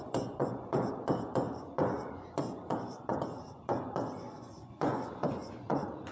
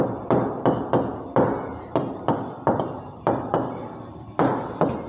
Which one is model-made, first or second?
first